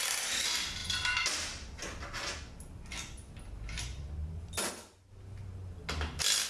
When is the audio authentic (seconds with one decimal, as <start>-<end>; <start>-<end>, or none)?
0.0-6.5